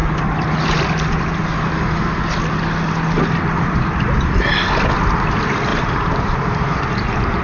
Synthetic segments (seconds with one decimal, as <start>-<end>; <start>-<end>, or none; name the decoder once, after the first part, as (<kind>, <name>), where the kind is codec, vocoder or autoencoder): 5.7-7.4 (vocoder, BigVGAN v2)